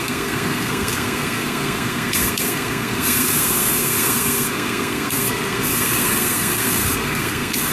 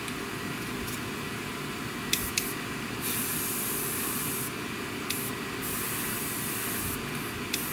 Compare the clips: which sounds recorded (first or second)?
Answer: second